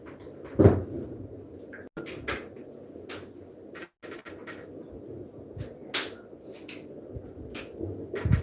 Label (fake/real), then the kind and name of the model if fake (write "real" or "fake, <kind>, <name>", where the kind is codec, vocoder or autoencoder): real